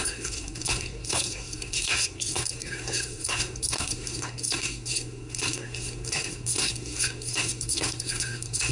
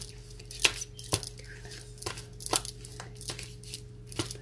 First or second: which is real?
second